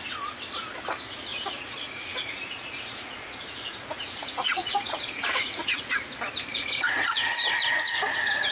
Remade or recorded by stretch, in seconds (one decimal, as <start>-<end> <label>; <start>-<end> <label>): 0.0-1.3 recorded; 1.3-5.8 remade; 5.8-6.5 recorded; 6.5-8.5 remade